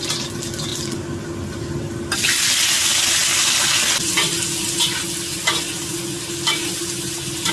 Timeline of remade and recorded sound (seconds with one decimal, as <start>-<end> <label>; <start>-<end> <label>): 0.0-7.5 recorded